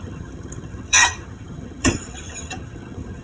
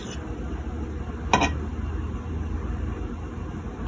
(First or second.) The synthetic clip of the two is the first